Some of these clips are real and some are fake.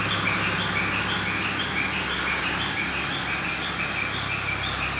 real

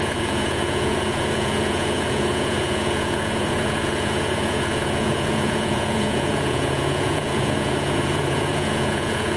fake